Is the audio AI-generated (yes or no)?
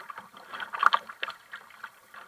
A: no